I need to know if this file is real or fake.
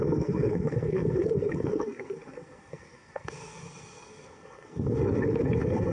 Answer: fake